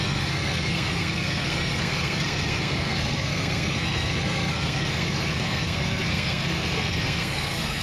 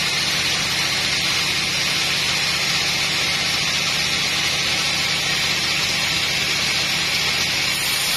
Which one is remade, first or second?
first